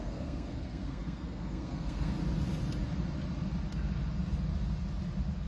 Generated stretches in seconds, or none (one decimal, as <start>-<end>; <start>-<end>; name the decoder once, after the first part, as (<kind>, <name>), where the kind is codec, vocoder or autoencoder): 0.0-2.1 (codec, SNAC)